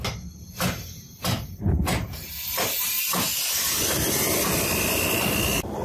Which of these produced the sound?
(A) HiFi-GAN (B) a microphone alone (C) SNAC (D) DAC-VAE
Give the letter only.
B